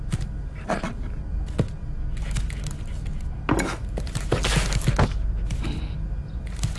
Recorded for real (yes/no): yes